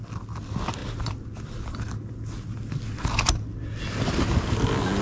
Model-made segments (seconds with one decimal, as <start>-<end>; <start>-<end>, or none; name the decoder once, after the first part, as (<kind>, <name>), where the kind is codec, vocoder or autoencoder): none